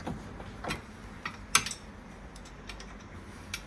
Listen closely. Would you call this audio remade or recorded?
recorded